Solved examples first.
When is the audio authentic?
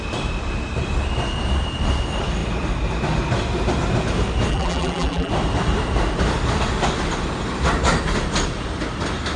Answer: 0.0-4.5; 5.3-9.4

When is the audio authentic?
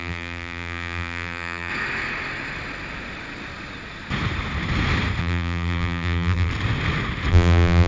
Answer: 1.7-5.2; 6.5-7.3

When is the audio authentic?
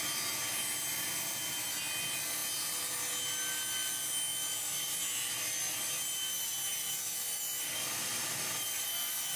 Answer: 0.0-9.4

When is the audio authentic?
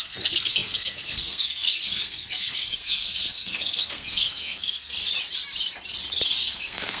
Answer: 5.0-6.4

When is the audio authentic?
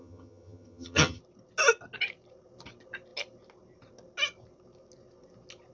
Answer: 1.2-5.7